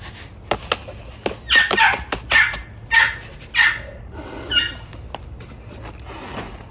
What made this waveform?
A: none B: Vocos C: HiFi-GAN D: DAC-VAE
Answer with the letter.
A